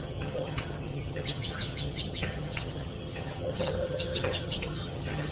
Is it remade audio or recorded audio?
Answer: remade